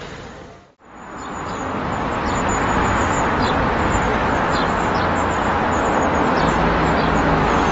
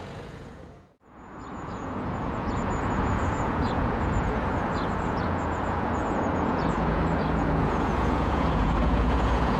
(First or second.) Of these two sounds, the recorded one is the first